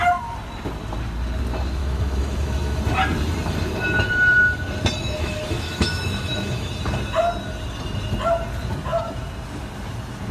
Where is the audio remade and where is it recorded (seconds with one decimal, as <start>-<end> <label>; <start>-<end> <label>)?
0.0-1.8 recorded; 1.8-2.8 remade; 2.8-5.0 recorded; 5.0-6.7 remade; 6.7-10.3 recorded